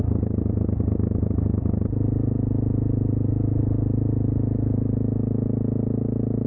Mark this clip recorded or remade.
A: recorded